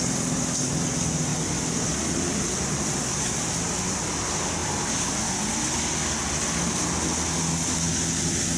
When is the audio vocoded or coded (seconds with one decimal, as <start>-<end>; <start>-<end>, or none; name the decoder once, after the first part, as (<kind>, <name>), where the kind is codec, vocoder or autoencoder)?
none